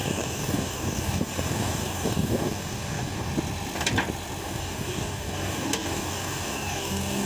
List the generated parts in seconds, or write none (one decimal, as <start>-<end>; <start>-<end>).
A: 0.0-3.3; 4.4-7.3